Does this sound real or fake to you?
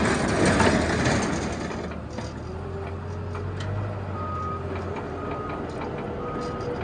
real